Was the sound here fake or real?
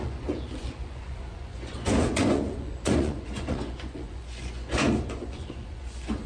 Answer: fake